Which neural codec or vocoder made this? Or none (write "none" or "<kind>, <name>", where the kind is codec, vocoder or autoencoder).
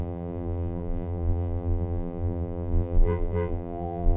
vocoder, BigVGAN v2